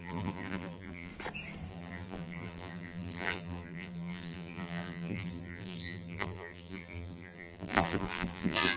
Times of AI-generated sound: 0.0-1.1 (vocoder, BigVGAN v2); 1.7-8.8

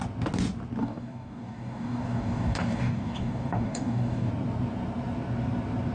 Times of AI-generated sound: 0.8-4.3 (codec, DAC)

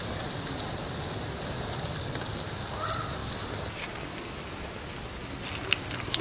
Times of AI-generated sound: none

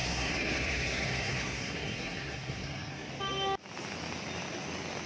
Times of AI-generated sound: 0.0-3.1 (codec, SNAC)

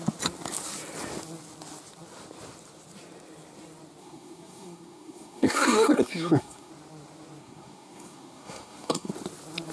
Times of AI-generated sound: 4.0-6.7 (codec, SNAC); 7.4-9.1

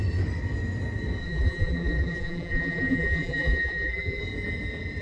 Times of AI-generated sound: 1.2-4.2 (vocoder, BigVGAN v2)